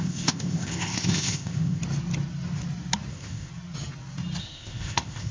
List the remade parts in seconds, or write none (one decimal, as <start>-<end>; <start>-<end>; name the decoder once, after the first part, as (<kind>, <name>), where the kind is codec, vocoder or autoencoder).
0.0-1.8 (codec, ZipCodec); 3.1-3.5; 4.4-5.3